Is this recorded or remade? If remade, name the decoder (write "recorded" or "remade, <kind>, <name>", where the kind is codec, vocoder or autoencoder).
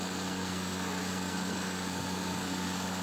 remade, codec, SNAC